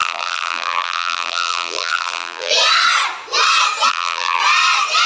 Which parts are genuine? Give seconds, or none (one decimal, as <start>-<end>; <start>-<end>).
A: 2.5-3.9; 4.4-5.1